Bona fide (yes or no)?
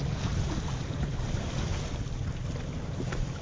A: yes